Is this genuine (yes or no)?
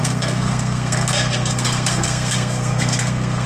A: no